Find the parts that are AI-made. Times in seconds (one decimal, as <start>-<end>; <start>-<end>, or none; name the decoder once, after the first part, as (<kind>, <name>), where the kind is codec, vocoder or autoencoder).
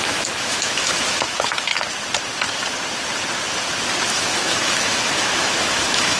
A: 0.0-1.7 (autoencoder, DAC-VAE); 4.1-6.2